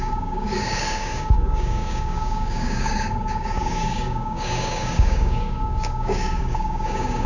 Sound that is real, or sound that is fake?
fake